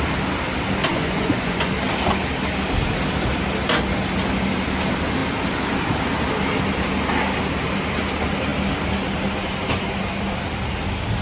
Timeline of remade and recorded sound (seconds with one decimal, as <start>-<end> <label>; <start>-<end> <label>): 0.0-0.9 recorded; 0.9-1.7 remade; 1.7-11.2 recorded